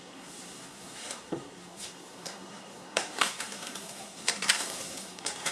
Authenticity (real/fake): fake